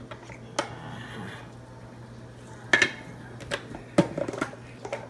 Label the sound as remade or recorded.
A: recorded